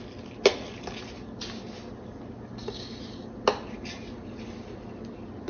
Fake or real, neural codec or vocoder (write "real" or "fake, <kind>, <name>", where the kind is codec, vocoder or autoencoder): real